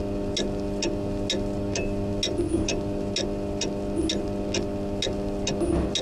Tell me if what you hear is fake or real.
real